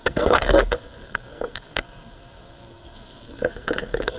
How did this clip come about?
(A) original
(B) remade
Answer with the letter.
B